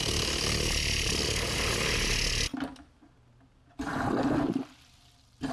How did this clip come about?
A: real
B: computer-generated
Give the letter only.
A